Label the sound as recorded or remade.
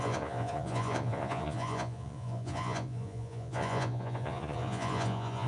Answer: remade